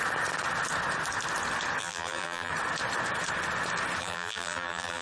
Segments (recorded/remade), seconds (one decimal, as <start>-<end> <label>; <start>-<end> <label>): 0.0-1.8 recorded; 1.8-2.5 remade; 2.5-4.0 recorded; 4.0-5.0 remade